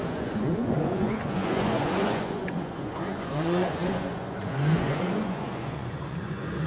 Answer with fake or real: fake